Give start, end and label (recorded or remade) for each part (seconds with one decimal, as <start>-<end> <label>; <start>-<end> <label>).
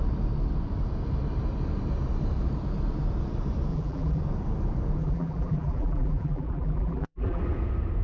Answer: 0.0-3.7 recorded; 3.7-4.2 remade; 4.2-5.0 recorded; 5.0-7.4 remade; 7.4-8.0 recorded